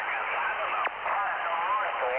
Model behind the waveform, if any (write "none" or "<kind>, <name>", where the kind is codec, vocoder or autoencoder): none